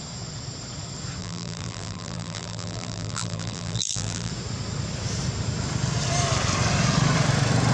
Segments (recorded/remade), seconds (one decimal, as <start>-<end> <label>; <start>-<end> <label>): 0.0-1.2 recorded; 1.2-4.3 remade; 4.3-7.7 recorded